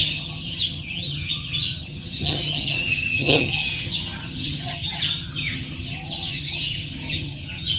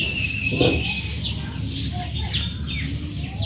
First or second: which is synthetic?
first